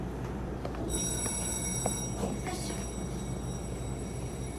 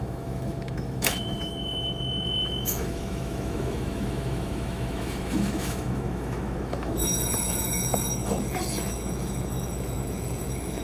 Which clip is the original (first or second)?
first